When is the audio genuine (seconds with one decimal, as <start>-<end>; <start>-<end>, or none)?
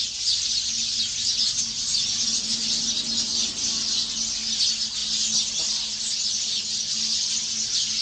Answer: 0.0-8.0